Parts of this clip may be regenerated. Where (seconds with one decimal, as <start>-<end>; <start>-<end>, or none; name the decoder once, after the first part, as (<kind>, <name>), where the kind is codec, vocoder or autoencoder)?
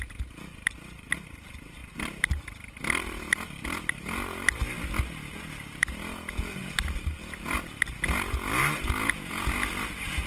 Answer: 6.6-7.2 (vocoder, BigVGAN v2)